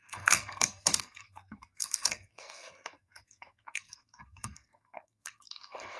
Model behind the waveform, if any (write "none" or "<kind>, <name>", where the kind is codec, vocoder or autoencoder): codec, SNAC